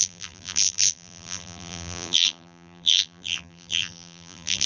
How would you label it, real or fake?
fake